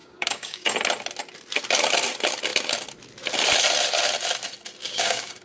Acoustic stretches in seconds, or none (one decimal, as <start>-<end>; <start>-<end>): 0.7-4.8